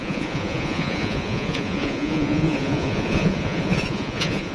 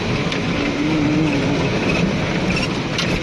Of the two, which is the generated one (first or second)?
first